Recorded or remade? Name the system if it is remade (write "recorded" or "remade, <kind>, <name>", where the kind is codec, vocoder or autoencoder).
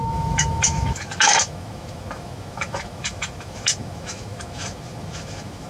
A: remade, autoencoder, DAC-VAE